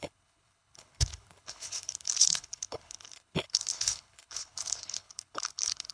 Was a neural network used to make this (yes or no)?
yes